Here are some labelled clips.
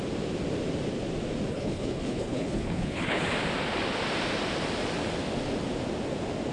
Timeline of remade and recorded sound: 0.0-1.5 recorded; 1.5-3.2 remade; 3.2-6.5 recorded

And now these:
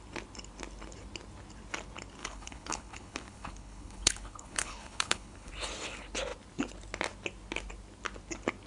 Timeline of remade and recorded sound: 0.0-2.2 recorded; 2.2-5.5 remade; 5.5-8.7 recorded

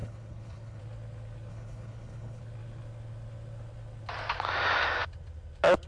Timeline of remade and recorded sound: 0.0-0.8 remade; 0.8-1.5 recorded; 1.5-2.4 remade; 2.4-5.9 recorded

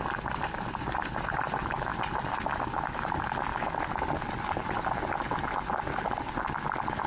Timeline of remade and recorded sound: 0.0-7.1 recorded

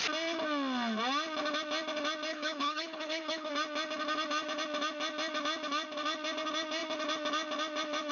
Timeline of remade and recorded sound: 0.0-2.3 recorded; 2.3-3.5 remade; 3.5-8.1 recorded

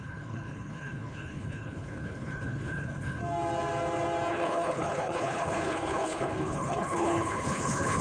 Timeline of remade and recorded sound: 0.0-3.2 remade; 3.2-4.3 recorded; 4.3-8.0 remade

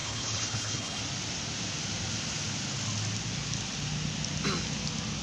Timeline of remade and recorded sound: 0.0-1.0 remade; 1.0-5.2 recorded